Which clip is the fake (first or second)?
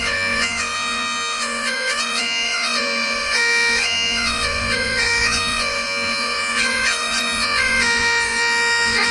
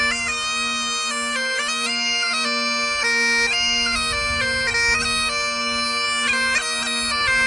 first